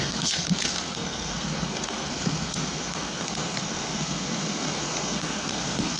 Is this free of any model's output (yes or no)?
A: no